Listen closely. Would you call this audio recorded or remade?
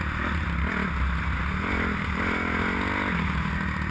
recorded